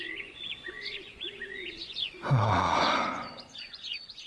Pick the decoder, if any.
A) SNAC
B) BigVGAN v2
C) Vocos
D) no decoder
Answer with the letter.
C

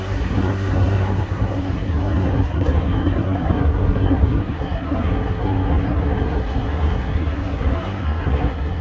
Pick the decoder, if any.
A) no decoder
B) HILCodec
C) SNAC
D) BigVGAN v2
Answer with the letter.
C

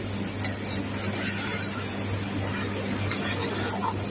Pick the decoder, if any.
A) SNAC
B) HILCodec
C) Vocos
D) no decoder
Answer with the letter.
D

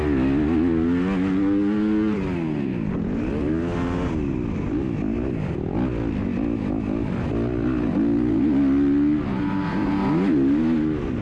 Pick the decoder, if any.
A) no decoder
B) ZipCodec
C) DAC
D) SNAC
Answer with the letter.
A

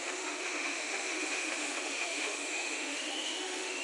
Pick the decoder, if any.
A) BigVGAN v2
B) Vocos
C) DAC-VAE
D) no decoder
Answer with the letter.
C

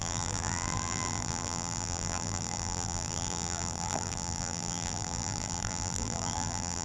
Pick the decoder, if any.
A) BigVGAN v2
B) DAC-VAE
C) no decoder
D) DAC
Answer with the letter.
A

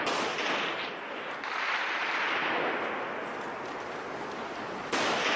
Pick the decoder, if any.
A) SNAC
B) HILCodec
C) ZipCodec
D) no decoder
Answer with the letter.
D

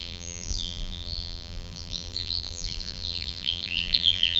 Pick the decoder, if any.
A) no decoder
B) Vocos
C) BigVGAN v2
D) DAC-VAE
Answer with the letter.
C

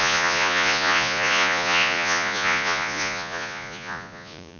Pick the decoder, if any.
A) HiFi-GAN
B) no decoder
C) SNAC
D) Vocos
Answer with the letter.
D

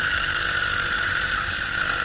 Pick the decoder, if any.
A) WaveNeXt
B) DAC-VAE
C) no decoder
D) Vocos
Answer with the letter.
C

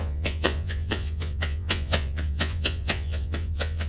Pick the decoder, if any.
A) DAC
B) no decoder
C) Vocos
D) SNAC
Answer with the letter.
C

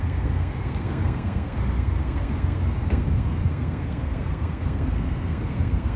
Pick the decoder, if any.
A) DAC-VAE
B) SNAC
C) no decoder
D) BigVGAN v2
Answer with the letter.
B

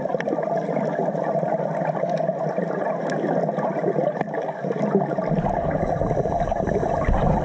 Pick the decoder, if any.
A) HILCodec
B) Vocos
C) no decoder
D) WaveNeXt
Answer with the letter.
C